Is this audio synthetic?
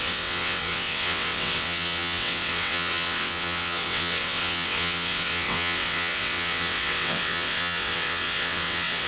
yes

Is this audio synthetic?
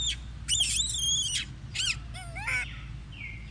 no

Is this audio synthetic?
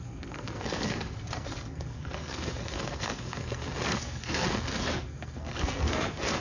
yes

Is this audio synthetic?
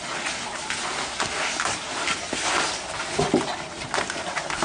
no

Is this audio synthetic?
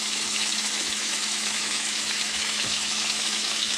yes